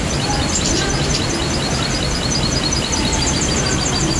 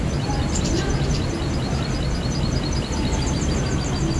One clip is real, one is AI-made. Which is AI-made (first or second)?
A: first